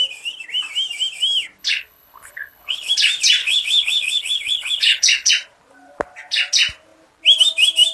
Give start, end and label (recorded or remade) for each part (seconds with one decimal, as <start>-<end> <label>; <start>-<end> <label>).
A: 0.0-1.6 recorded; 1.6-2.9 remade; 2.9-3.4 recorded; 3.4-5.3 remade; 5.3-7.9 recorded